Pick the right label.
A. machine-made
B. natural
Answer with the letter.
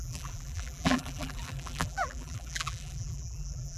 A